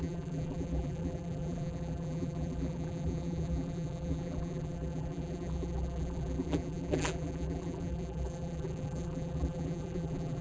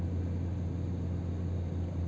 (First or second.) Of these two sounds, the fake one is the first